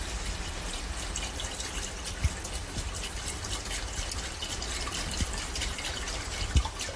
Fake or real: real